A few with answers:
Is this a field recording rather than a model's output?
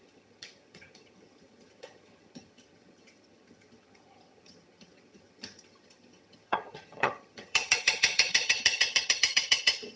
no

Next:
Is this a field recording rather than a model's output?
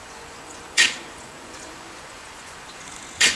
no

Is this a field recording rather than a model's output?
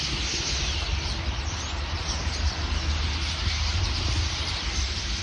yes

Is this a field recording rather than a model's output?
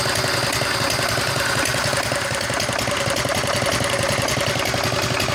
yes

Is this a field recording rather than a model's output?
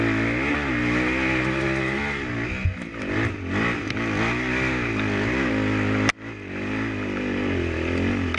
yes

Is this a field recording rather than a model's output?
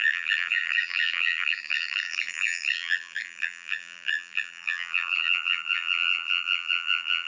no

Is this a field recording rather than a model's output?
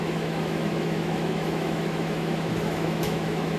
no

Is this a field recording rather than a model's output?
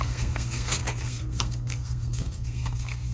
no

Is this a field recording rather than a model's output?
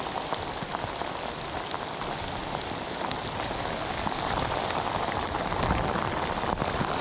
yes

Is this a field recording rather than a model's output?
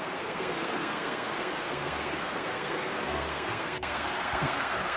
no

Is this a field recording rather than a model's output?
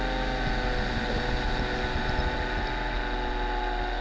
yes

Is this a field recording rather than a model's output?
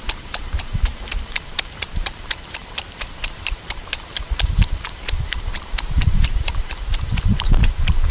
no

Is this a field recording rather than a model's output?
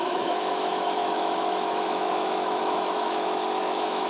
no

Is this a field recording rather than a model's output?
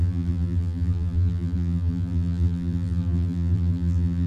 no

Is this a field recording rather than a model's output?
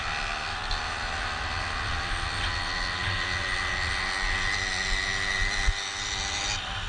yes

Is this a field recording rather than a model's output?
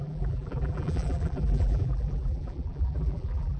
no